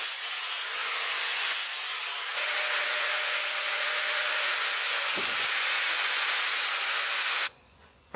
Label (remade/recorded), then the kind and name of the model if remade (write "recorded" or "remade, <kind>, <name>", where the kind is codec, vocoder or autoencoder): remade, vocoder, Vocos